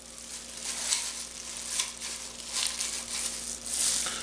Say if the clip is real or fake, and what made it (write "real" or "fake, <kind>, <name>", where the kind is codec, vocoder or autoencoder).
real